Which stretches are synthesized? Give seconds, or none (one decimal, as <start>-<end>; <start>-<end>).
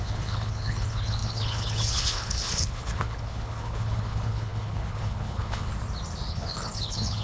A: 0.0-5.7; 6.3-7.2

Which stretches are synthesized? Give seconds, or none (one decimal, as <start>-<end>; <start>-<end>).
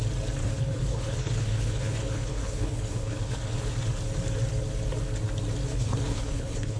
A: 0.4-3.7; 5.7-6.8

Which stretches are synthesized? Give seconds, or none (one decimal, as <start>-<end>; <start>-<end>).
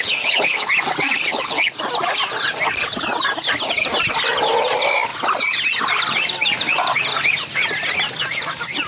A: 0.0-0.7; 1.3-1.8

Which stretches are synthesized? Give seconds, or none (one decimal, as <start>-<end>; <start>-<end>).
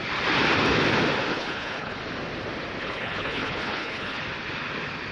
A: 1.3-2.0; 2.8-4.2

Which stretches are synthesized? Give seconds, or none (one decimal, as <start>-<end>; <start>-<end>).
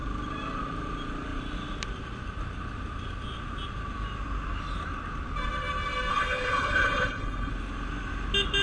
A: 6.1-7.5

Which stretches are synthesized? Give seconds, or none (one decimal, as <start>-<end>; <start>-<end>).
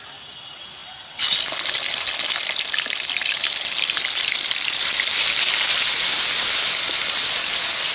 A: none